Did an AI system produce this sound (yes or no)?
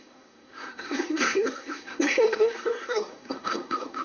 yes